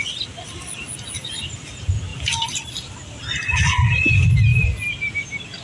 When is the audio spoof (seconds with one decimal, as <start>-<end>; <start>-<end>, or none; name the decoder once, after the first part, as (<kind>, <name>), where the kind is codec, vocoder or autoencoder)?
none